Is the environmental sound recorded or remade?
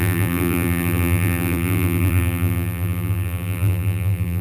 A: remade